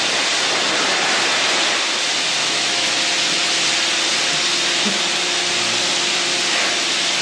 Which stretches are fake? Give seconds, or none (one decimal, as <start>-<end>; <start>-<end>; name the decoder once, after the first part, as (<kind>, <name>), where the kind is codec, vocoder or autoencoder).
2.4-2.9 (autoencoder, DAC-VAE)